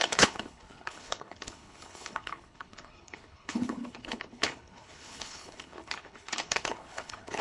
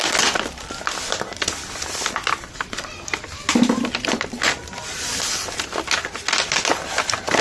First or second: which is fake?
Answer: first